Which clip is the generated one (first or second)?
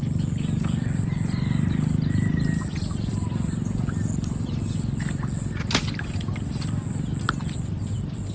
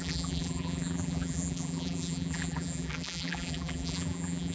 second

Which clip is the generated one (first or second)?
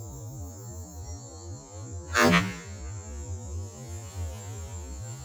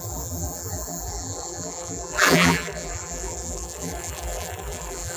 second